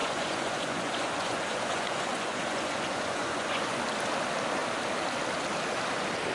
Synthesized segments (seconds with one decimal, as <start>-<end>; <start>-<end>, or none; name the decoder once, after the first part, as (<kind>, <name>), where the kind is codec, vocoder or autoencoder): 0.0-3.8 (vocoder, Vocos)